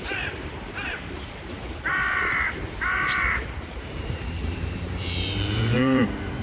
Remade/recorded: remade